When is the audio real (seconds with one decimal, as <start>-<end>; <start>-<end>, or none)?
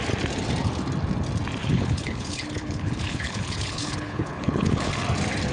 0.0-1.6; 4.9-5.5